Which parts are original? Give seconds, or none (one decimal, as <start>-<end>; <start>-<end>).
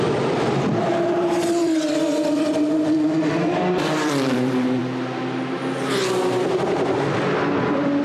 4.8-8.0